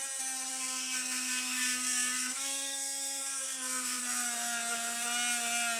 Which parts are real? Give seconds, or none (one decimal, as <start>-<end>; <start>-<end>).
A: 0.0-0.5; 4.0-5.8